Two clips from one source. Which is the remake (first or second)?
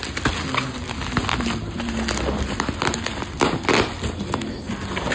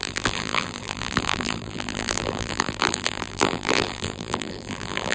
second